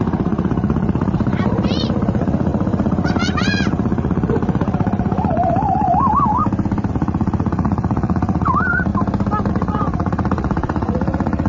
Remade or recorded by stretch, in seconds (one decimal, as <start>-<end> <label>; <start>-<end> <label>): 0.0-6.4 remade; 6.4-6.9 recorded; 6.9-8.9 remade; 8.9-9.5 recorded; 9.5-11.5 remade